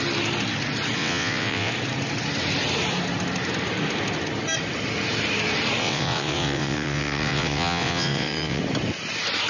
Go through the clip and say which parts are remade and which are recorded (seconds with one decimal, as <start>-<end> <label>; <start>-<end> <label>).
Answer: 0.0-1.0 recorded; 1.0-1.7 remade; 1.7-5.8 recorded; 5.8-8.6 remade; 8.6-9.5 recorded